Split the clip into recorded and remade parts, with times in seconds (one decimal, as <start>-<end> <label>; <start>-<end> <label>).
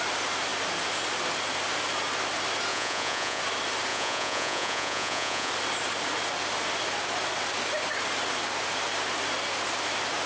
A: 0.0-2.7 recorded; 2.7-3.4 remade; 3.4-3.9 recorded; 3.9-5.5 remade; 5.5-10.3 recorded